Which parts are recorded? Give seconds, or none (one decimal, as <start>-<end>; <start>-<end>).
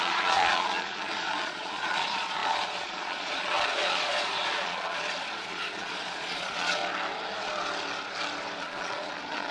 6.8-8.6